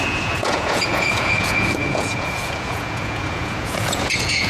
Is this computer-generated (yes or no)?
yes